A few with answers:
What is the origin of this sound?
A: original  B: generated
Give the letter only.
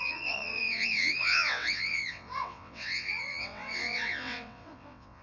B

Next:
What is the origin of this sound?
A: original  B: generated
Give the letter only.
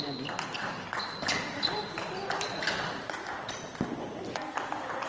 A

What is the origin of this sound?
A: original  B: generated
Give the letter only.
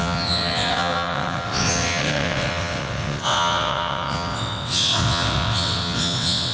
B